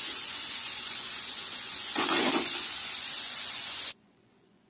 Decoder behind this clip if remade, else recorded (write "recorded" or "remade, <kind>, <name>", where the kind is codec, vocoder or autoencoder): remade, vocoder, Vocos